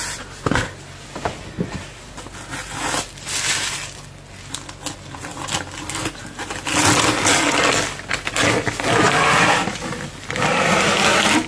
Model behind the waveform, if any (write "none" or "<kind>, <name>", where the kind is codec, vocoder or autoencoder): none